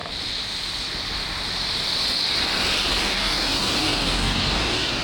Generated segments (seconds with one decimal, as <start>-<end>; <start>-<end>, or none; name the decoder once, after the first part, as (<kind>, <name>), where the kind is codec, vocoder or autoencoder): 3.0-5.0 (codec, DAC)